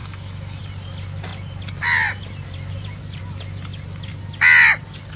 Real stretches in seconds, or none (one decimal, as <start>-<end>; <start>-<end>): 0.6-5.2